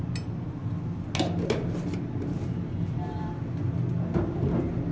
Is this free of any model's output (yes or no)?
yes